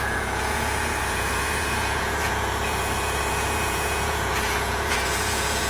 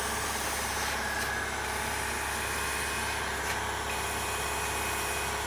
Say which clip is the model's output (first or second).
first